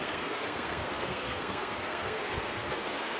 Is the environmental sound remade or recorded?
remade